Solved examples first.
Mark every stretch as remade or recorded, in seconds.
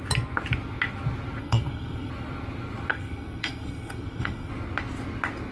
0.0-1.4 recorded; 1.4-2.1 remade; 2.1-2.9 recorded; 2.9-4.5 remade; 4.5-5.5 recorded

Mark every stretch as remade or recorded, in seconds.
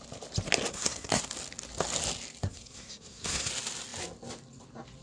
0.0-0.7 recorded; 0.7-1.2 remade; 1.2-2.4 recorded; 2.4-3.5 remade; 3.5-5.0 recorded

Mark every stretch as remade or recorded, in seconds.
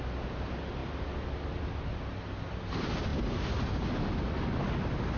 0.0-5.2 recorded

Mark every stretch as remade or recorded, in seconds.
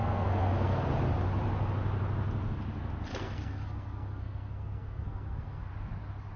0.0-0.9 remade; 0.9-3.1 recorded; 3.1-5.7 remade; 5.7-6.4 recorded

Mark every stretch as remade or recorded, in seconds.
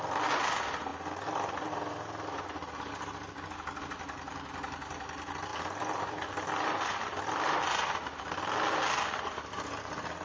0.0-10.2 recorded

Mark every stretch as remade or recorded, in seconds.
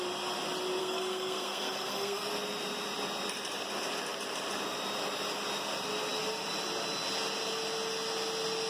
0.0-0.8 recorded; 0.8-2.3 remade; 2.3-8.7 recorded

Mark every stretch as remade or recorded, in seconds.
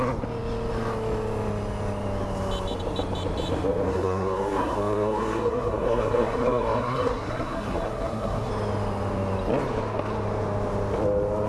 0.0-3.9 recorded; 3.9-8.5 remade; 8.5-11.5 recorded